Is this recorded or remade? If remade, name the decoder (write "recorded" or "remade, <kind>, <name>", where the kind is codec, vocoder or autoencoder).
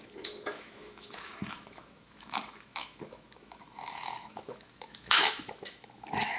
remade, autoencoder, DAC-VAE